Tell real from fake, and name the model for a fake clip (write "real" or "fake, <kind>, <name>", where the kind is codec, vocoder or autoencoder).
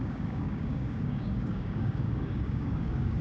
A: fake, codec, DAC